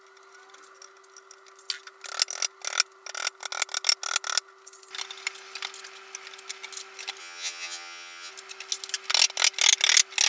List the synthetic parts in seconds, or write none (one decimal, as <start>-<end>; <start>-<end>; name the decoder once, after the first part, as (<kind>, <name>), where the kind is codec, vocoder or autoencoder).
7.2-8.3 (vocoder, HiFi-GAN)